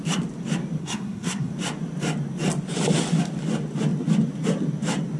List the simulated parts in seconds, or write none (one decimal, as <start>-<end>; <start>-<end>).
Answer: 0.8-1.5